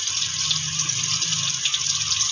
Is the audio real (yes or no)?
yes